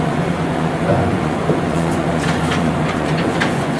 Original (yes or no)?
no